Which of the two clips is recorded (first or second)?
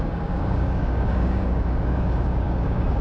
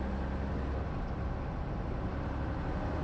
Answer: second